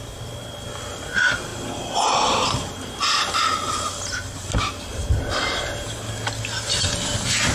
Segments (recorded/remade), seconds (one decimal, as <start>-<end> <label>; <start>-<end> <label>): 0.0-7.5 recorded